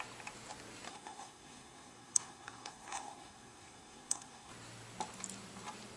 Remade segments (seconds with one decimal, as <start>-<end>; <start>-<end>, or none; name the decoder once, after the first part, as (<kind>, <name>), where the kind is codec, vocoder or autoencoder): 0.9-4.5 (codec, SNAC)